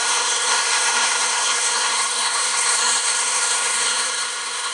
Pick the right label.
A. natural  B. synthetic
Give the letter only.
B